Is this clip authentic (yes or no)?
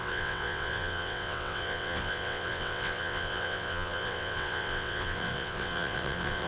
no